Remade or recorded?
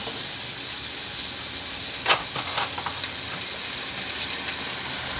recorded